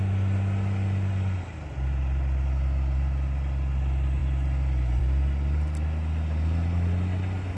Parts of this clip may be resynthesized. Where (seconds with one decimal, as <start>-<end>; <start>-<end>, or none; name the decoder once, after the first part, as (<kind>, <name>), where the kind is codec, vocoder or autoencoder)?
none